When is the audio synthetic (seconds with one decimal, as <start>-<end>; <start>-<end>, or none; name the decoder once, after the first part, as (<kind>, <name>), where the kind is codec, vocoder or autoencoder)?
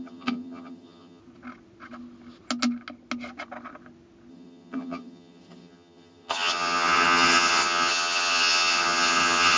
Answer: 0.0-1.2 (vocoder, HiFi-GAN); 4.3-9.6